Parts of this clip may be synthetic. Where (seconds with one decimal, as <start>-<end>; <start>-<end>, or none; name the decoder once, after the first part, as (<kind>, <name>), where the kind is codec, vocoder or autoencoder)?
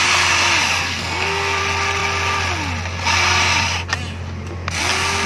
0.8-1.6 (codec, SNAC)